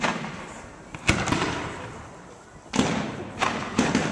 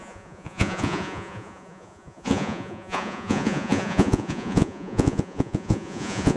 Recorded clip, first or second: first